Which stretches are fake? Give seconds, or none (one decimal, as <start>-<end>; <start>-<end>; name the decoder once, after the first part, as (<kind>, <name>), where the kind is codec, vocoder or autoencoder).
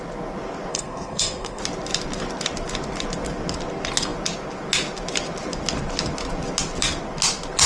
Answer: 0.7-1.6 (codec, SNAC)